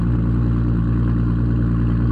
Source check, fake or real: real